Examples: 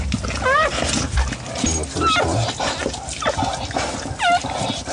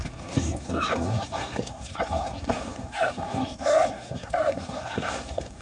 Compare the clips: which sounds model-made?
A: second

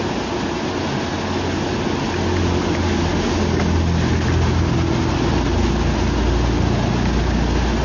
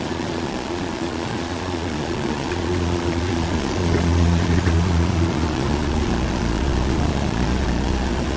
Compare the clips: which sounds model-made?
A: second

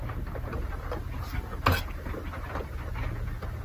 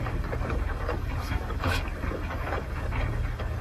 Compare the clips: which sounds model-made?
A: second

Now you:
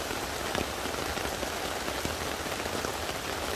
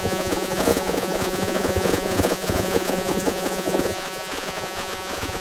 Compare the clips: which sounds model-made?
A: second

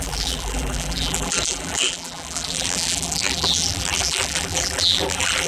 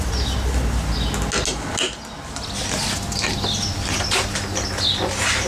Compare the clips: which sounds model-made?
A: first